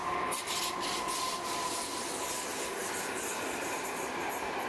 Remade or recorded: recorded